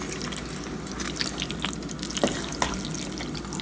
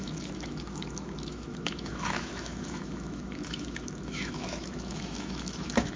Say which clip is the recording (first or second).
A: first